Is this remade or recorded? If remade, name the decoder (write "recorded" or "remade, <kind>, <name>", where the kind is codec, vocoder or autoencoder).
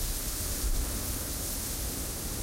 recorded